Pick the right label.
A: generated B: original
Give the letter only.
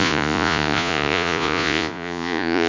A